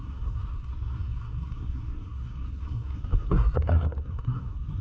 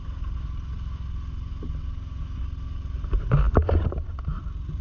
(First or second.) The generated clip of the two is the first